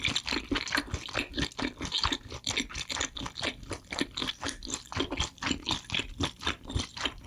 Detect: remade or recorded recorded